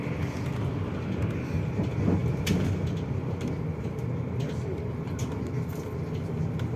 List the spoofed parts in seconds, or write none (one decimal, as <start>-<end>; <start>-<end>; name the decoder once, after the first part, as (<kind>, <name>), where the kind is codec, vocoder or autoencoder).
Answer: none